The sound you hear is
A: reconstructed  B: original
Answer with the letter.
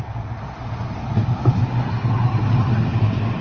B